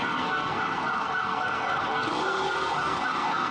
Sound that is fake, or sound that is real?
fake